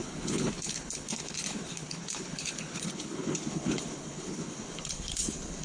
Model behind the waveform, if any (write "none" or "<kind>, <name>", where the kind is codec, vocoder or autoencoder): codec, HILCodec